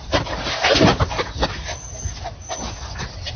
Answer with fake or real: real